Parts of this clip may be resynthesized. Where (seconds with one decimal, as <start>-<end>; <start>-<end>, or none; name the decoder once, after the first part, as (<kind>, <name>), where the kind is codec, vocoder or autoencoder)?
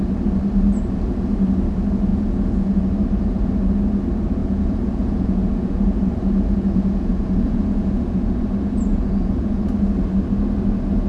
2.1-2.8 (vocoder, Vocos); 4.4-9.5